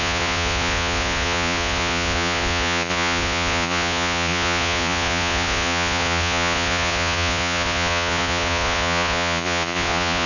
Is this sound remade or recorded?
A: remade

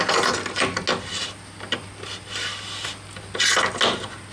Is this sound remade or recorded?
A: recorded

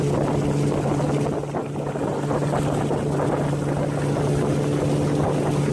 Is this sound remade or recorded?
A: recorded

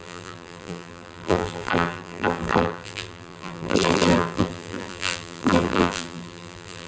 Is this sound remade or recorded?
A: remade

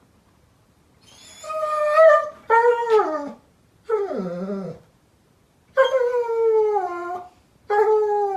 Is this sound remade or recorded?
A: recorded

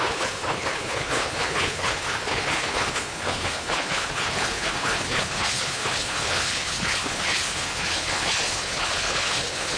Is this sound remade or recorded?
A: remade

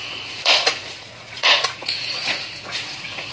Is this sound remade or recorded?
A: remade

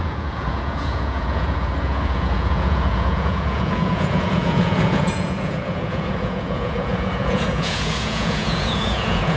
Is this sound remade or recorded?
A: remade